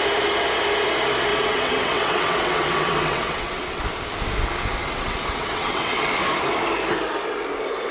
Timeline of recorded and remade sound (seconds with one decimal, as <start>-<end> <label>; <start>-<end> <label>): 0.0-1.3 recorded; 1.3-3.8 remade; 3.8-4.8 recorded; 4.8-6.1 remade; 6.1-7.9 recorded